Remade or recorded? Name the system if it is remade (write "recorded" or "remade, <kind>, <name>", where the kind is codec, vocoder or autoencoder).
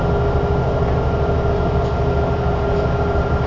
recorded